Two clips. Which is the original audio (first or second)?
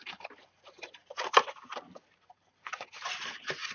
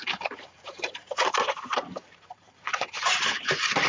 first